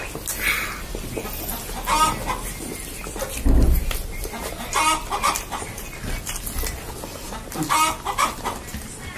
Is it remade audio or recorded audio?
recorded